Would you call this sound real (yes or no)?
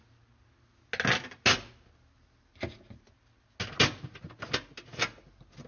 yes